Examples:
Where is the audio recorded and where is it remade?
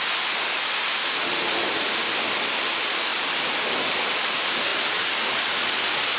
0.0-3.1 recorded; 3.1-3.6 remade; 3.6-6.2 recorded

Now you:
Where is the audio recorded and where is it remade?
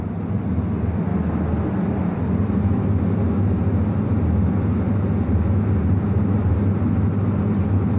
0.0-8.0 recorded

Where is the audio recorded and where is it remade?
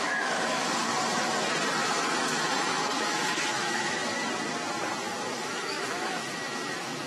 0.0-0.9 remade; 0.9-1.8 recorded; 1.8-4.0 remade; 4.0-5.2 recorded; 5.2-7.1 remade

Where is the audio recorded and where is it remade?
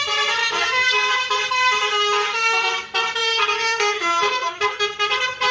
0.0-0.4 recorded; 0.4-1.1 remade; 1.1-3.2 recorded; 3.2-4.8 remade; 4.8-5.5 recorded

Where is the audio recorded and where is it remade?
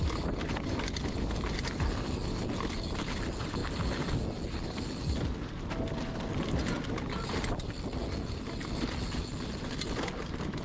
0.0-10.6 recorded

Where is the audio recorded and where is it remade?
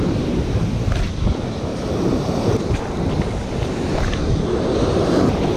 0.0-1.7 recorded; 1.7-2.8 remade; 2.8-5.6 recorded